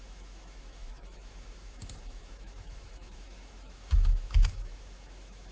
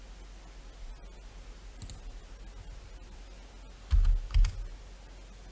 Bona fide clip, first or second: second